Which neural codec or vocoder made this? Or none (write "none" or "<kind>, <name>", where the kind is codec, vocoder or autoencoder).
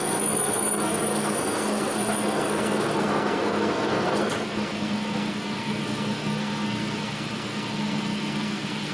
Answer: codec, SNAC